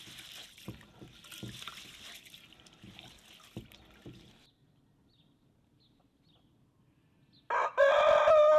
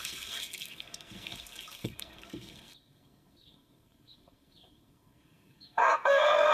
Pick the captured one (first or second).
first